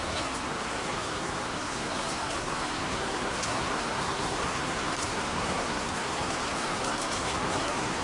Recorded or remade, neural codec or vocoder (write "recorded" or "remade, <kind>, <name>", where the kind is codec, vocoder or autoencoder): remade, codec, SNAC